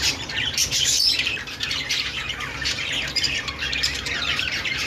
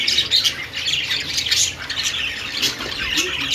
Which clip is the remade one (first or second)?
first